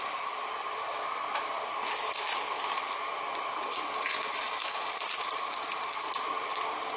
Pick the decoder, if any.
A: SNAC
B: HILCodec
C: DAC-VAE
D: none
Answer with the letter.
D